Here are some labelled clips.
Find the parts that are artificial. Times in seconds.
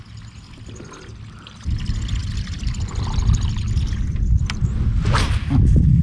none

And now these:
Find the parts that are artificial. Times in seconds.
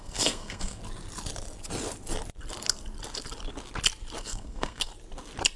0.0-0.8 (codec, SNAC); 4.2-4.9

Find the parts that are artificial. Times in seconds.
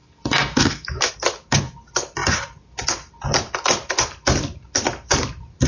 0.0-1.1 (autoencoder, DAC-VAE)